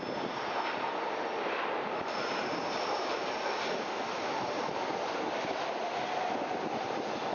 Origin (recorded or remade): recorded